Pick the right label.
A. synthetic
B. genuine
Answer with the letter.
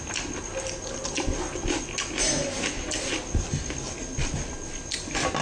B